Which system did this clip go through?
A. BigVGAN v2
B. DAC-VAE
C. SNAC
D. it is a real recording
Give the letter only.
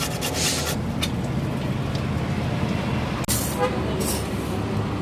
D